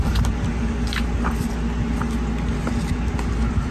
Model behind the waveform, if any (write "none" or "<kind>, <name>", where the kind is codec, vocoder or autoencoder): none